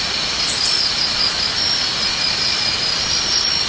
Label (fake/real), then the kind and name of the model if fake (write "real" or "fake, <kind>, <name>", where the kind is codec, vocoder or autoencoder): real